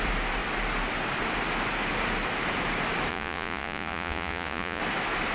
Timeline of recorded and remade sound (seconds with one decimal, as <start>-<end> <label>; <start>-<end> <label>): 0.0-3.1 recorded; 3.1-4.8 remade; 4.8-5.3 recorded